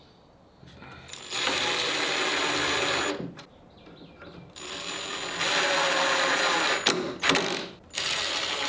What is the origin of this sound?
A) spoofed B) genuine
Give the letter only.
B